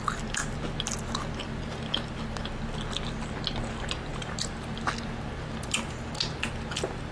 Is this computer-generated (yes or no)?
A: no